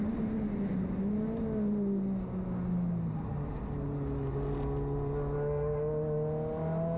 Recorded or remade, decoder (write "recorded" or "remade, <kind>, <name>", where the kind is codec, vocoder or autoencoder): recorded